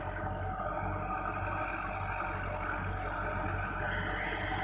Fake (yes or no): no